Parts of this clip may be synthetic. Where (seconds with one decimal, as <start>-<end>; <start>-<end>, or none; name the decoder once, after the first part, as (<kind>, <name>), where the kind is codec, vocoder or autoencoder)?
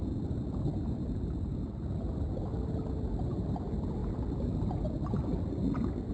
none